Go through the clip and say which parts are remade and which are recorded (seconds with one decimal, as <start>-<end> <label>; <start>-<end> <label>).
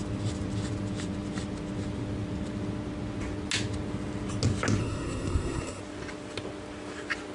0.0-4.8 recorded; 4.8-5.8 remade; 5.8-7.3 recorded